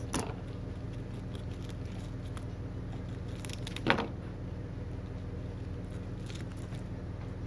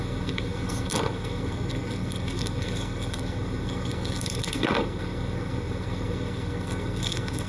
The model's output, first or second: second